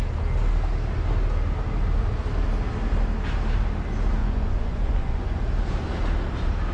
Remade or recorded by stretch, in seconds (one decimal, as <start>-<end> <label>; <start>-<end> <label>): 0.0-4.2 recorded; 4.2-5.4 remade; 5.4-6.7 recorded